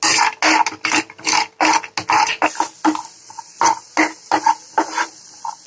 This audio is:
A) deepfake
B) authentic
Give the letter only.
B